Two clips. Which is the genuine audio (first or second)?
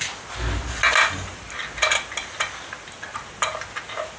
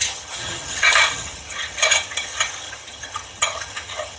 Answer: first